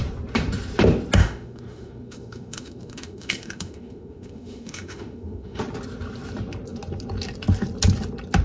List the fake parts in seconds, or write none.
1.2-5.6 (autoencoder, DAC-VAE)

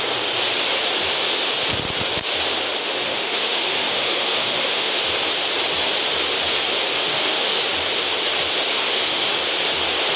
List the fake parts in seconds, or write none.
2.8-5.0 (autoencoder, DAC-VAE); 7.1-7.6; 8.8-9.4

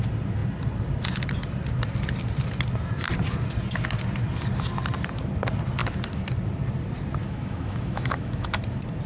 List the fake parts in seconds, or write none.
7.2-8.6 (autoencoder, DAC-VAE)